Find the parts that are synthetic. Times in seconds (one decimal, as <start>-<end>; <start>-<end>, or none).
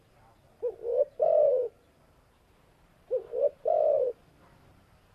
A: 0.9-4.0